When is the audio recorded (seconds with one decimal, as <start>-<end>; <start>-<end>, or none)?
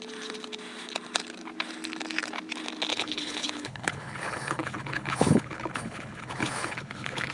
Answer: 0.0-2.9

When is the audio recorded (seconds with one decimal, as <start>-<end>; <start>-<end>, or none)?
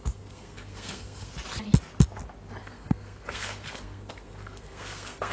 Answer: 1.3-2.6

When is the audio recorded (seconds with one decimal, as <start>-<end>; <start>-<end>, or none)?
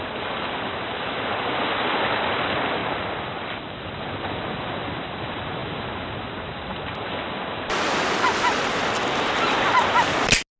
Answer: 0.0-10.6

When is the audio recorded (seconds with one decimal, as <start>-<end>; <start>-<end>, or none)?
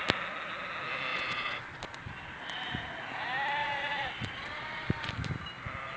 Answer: 0.0-1.1; 2.6-3.6; 5.1-6.0